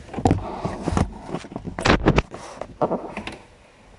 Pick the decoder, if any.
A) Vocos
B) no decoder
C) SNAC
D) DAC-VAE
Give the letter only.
B